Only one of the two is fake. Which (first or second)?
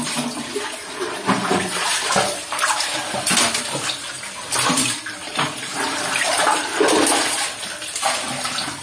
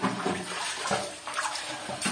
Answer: first